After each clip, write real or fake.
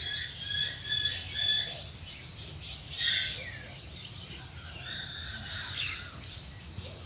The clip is real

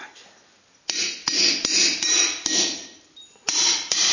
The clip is real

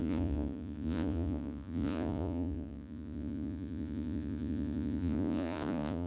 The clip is fake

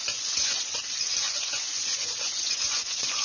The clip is fake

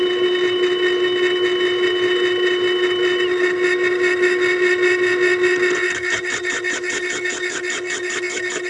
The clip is real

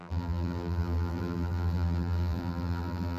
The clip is fake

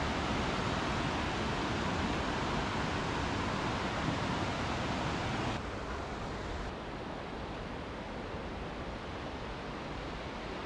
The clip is real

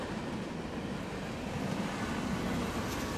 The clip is real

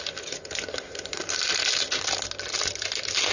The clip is real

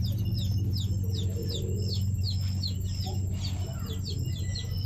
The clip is real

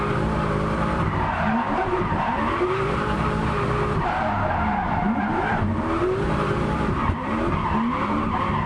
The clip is fake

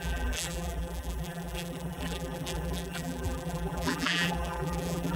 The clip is fake